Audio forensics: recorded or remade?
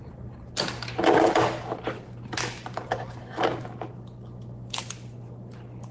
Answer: recorded